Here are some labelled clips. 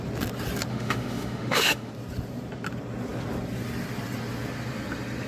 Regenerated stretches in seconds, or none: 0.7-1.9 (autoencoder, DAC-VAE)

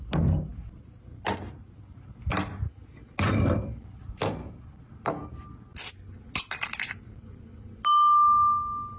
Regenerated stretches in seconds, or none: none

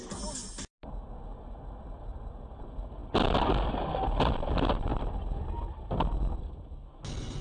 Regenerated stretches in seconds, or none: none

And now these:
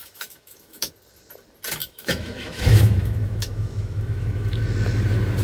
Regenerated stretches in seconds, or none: 0.0-0.9 (autoencoder, DAC-VAE); 1.8-4.6

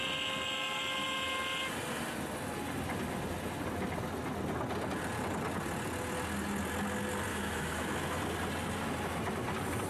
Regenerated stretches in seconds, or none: 7.3-7.9 (autoencoder, DAC-VAE)

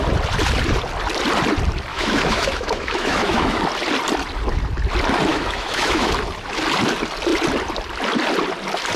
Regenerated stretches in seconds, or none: 1.9-3.6 (autoencoder, DAC-VAE); 5.3-6.1

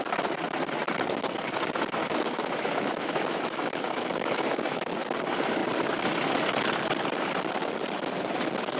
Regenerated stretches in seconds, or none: 2.0-5.0 (autoencoder, DAC-VAE)

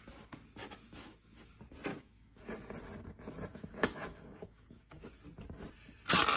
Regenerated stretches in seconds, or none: 0.6-1.5 (autoencoder, DAC-VAE); 1.9-2.5; 3.5-5.1